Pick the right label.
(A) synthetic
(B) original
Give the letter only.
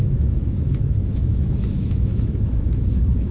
A